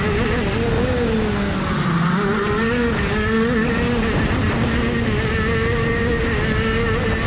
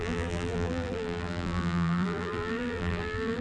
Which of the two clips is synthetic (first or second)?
second